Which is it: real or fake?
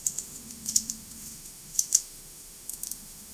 fake